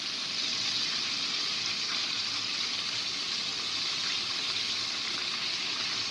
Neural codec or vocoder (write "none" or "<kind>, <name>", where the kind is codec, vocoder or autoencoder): vocoder, BigVGAN v2